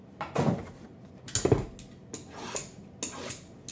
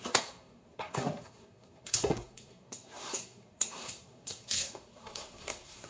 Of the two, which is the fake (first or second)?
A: second